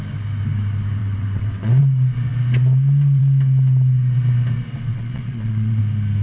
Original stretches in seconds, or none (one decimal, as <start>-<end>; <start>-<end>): 0.0-1.0; 1.8-4.9; 5.8-6.2